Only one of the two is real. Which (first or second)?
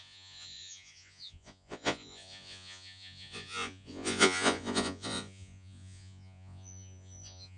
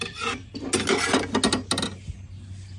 second